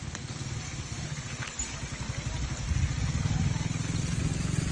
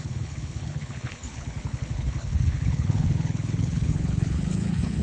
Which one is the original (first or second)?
first